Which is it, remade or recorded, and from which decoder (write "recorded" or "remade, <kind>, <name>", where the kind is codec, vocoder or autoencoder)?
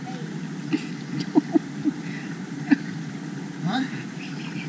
remade, vocoder, BigVGAN v2